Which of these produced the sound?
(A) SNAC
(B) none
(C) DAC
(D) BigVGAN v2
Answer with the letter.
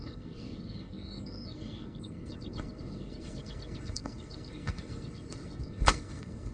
A